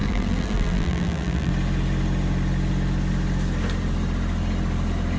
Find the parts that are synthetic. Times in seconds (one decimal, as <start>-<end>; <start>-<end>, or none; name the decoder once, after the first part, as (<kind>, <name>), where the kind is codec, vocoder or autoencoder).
0.0-1.5 (vocoder, BigVGAN v2)